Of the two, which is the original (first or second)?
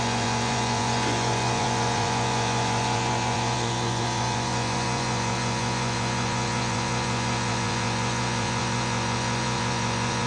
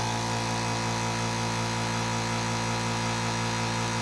second